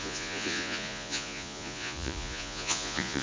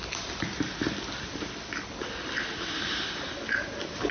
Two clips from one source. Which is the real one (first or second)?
second